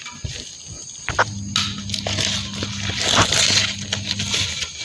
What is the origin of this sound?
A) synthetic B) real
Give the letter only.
B